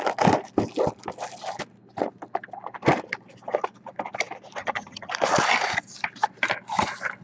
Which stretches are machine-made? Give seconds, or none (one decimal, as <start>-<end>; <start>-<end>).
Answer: 4.6-5.1